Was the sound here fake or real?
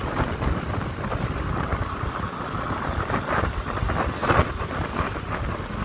real